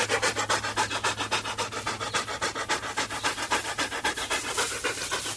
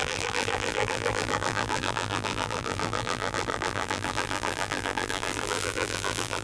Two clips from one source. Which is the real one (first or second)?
first